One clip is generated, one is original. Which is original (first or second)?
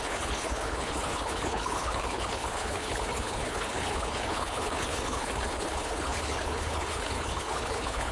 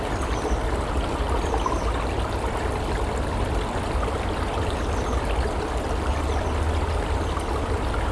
second